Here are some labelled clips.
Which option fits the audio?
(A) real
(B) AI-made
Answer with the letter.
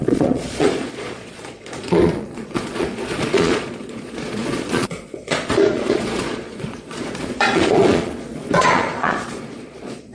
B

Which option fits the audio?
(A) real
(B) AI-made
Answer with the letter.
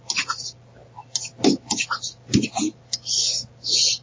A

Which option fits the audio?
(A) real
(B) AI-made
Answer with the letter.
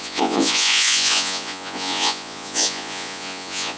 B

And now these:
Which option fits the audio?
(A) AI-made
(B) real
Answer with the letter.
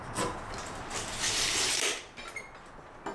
B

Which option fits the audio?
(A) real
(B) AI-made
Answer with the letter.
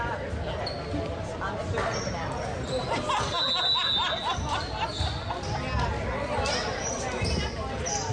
A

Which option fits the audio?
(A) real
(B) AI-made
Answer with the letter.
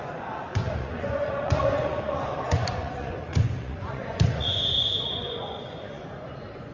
B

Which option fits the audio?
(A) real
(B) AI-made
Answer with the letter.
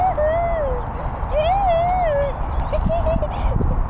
A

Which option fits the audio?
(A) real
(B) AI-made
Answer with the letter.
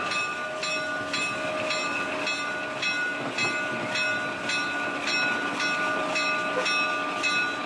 A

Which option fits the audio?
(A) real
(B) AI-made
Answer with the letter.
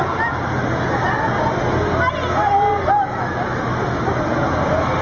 A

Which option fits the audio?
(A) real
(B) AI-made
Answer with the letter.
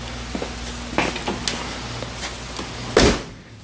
A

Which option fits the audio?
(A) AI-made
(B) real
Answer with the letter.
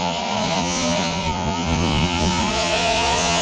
A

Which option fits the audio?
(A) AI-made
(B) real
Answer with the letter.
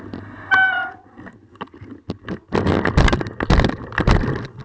B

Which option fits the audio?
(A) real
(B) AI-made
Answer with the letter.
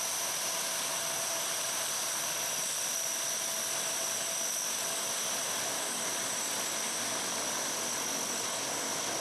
A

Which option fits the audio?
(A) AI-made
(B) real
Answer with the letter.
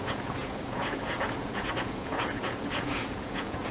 A